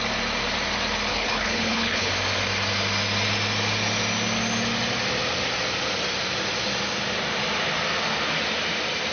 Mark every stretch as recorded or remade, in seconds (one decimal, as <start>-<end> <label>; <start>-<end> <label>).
0.0-1.1 recorded; 1.1-2.1 remade; 2.1-9.1 recorded